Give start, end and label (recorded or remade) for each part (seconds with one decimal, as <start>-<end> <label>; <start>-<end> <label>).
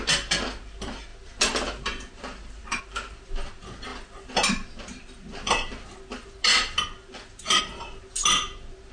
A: 0.0-8.9 recorded